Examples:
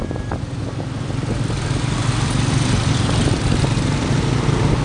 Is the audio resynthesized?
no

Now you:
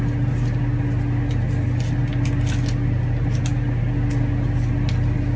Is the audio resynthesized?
no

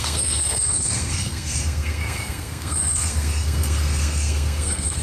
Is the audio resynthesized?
yes